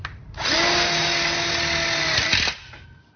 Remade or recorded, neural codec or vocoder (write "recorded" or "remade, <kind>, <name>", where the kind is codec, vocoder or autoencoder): recorded